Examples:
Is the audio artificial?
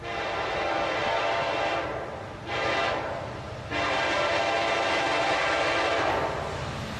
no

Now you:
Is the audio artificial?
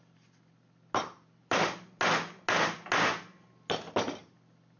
no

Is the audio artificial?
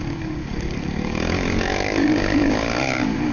yes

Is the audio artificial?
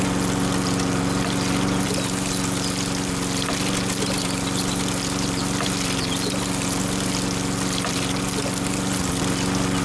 no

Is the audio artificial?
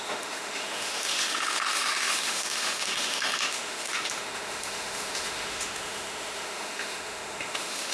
yes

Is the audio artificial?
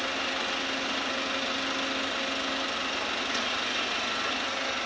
no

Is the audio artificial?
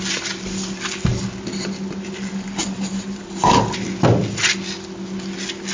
no